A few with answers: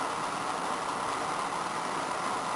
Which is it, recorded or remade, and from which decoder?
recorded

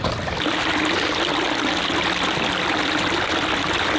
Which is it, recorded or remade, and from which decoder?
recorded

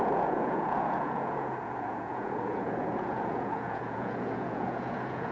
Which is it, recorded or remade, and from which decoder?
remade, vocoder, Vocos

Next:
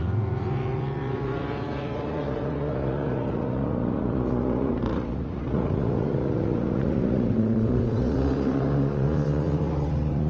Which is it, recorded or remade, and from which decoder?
remade, vocoder, Vocos